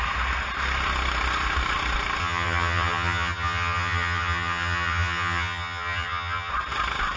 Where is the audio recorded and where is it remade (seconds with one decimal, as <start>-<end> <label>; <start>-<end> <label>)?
0.0-2.2 recorded; 2.2-6.5 remade; 6.5-7.2 recorded